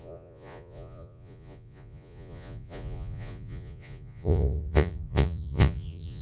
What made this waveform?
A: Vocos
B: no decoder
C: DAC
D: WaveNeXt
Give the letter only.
A